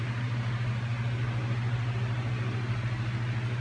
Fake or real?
real